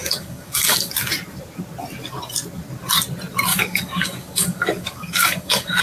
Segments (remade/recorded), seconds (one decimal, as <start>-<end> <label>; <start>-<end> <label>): 0.0-0.9 remade; 0.9-3.5 recorded; 3.5-5.8 remade